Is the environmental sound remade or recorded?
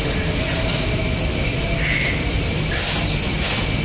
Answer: recorded